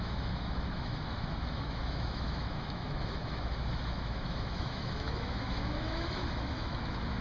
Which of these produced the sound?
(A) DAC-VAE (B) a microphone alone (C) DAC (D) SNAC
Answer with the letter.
A